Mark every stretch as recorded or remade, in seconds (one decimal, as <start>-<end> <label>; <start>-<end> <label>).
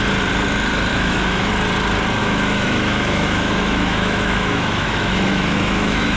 0.0-0.9 recorded; 0.9-1.5 remade; 1.5-2.2 recorded; 2.2-6.2 remade